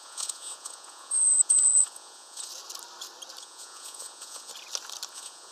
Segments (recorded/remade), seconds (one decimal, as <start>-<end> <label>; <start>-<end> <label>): 0.0-2.5 remade; 2.5-3.4 recorded; 3.4-4.5 remade; 4.5-5.1 recorded; 5.1-5.5 remade